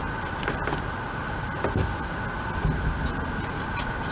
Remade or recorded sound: recorded